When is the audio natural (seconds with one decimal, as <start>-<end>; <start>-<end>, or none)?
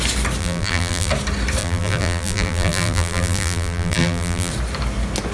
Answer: 0.0-0.4; 1.1-1.6; 4.5-5.3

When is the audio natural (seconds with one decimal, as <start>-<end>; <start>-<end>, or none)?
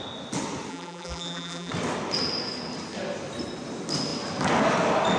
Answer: 0.0-0.7; 1.7-5.2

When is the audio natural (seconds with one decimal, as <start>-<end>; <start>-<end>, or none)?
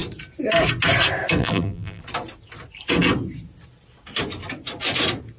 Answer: 0.0-1.4; 2.0-5.4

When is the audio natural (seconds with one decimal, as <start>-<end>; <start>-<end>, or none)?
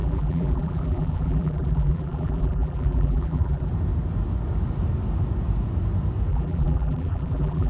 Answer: 3.7-6.3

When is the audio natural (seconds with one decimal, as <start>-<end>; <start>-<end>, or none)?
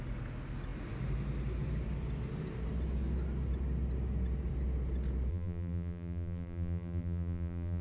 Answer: 0.0-5.3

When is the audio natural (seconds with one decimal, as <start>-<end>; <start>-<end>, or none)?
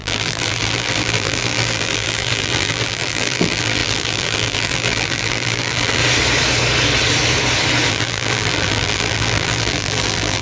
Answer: 6.0-7.9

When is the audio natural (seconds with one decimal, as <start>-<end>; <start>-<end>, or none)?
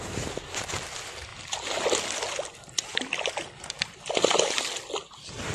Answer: 0.0-5.5